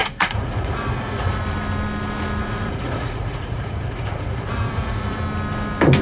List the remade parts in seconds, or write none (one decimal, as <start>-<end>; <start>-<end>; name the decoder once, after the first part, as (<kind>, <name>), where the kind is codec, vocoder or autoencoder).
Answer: 0.0-1.4 (vocoder, Vocos); 2.4-5.2